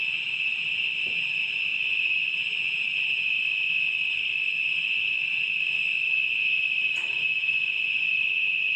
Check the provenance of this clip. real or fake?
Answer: real